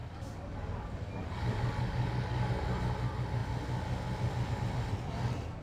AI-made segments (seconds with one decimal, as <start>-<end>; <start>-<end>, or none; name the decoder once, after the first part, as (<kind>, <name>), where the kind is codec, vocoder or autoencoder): 0.0-2.5 (codec, DAC)